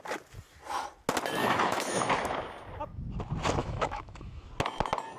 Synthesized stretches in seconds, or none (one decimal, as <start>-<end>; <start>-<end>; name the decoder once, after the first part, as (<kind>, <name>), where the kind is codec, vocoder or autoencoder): 1.4-2.1 (autoencoder, DAC-VAE); 3.6-4.5